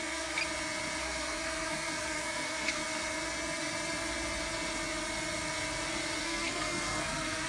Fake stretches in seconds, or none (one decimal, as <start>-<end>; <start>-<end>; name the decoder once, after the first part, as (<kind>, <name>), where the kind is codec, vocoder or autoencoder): 0.0-0.4 (codec, SNAC); 1.0-2.8; 6.2-7.5